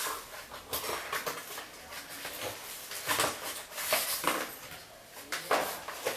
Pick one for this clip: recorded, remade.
recorded